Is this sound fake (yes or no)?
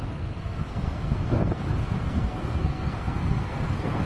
yes